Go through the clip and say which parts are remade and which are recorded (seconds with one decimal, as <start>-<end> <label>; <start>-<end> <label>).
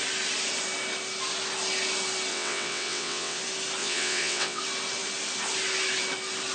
0.0-2.3 recorded; 2.3-3.4 remade; 3.4-3.8 recorded; 3.8-4.6 remade; 4.6-6.5 recorded